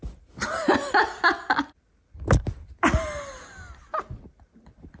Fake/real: real